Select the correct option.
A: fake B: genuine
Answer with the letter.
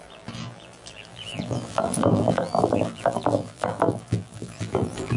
A